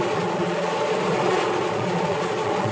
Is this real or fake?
fake